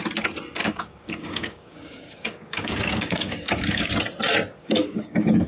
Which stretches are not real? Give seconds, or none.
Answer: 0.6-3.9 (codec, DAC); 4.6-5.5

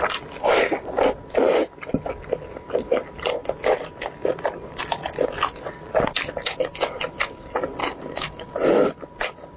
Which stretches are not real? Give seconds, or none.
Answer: 0.4-1.1 (codec, DAC); 7.8-8.5

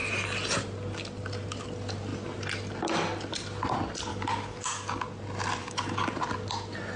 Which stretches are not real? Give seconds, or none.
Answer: 4.1-5.0 (codec, DAC); 5.6-6.1

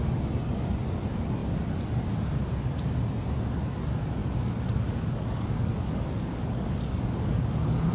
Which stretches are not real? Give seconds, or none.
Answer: 4.2-7.9 (codec, DAC)

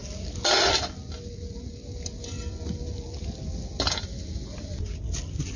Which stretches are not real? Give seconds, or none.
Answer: none